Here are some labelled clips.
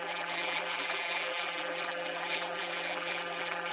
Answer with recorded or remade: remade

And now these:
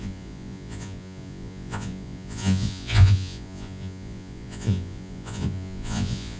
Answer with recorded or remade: remade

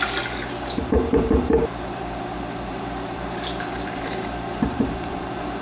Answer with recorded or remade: remade